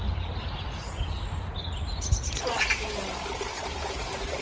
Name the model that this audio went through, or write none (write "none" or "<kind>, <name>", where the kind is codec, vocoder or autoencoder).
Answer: none